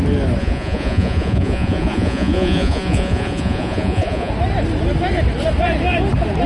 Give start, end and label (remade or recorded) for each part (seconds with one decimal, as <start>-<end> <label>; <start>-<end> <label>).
0.0-0.4 recorded; 0.4-4.3 remade; 4.3-6.5 recorded